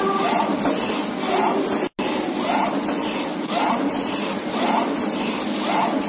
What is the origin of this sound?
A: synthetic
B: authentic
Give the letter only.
B